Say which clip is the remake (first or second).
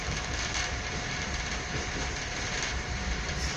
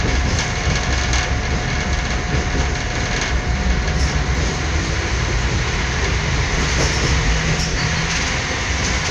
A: first